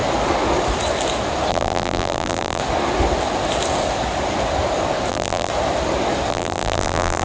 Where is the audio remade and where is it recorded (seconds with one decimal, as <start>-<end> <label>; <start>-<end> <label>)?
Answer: 0.0-1.5 recorded; 1.5-2.6 remade; 2.6-5.1 recorded; 5.1-5.5 remade; 5.5-6.3 recorded; 6.3-7.2 remade